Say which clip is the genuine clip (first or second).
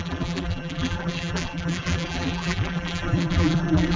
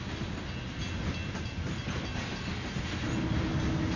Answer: second